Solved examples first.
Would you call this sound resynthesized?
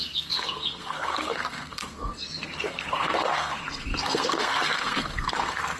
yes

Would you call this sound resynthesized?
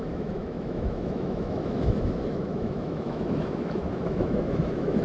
yes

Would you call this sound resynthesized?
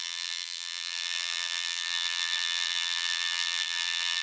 yes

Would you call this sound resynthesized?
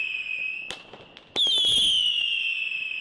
no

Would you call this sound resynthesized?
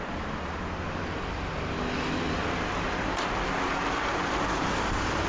no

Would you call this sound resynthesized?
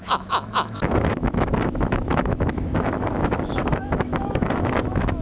yes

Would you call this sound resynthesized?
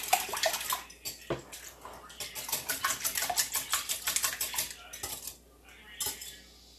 no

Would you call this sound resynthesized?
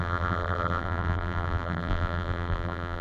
yes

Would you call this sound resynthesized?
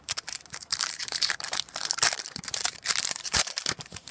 yes